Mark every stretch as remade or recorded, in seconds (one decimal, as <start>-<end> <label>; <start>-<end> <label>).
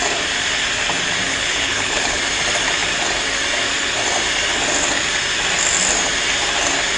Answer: 0.0-1.3 recorded; 1.3-2.2 remade; 2.2-7.0 recorded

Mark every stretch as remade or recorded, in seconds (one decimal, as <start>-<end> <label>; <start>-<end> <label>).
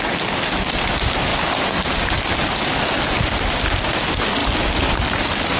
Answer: 0.0-4.4 recorded; 4.4-5.6 remade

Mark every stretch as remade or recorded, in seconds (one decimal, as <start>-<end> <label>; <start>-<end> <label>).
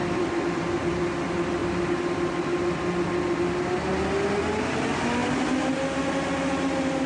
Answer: 0.0-1.0 remade; 1.0-7.1 recorded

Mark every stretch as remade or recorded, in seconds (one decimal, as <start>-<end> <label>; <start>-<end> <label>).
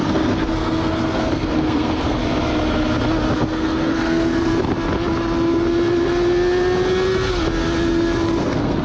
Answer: 0.0-2.2 remade; 2.2-3.4 recorded; 3.4-4.5 remade; 4.5-8.4 recorded; 8.4-8.8 remade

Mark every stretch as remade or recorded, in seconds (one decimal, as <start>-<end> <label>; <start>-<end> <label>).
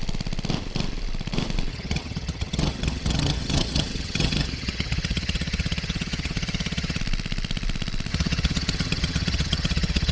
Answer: 0.0-1.7 recorded; 1.7-7.0 remade; 7.0-8.1 recorded; 8.1-10.1 remade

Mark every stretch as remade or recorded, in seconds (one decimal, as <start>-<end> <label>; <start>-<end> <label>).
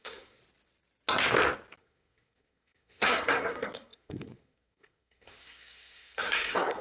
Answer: 0.0-0.4 remade; 0.4-1.8 recorded; 1.8-6.8 remade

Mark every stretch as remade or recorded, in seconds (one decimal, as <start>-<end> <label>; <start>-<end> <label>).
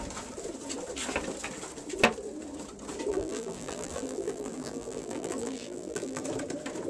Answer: 0.0-3.1 recorded; 3.1-6.2 remade; 6.2-6.9 recorded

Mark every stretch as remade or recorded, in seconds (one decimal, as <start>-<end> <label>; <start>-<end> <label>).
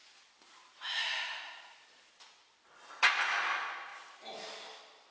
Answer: 0.0-5.1 recorded